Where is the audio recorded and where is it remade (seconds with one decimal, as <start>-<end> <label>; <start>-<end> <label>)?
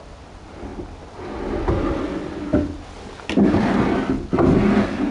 0.0-5.1 recorded